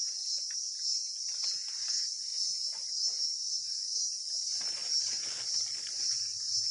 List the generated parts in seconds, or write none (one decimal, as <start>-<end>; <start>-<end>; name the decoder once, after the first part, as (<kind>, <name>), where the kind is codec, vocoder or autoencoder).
none